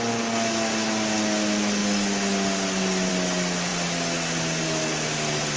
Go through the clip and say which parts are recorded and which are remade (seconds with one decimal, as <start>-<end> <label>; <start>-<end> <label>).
0.0-5.6 recorded